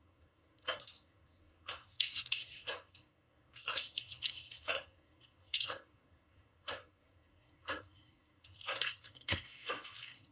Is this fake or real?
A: fake